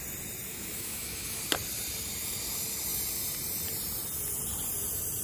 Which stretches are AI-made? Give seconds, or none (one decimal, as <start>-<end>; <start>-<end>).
0.5-1.4